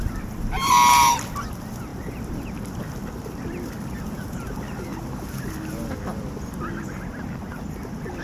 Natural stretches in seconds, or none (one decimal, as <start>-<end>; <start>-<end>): 0.0-8.2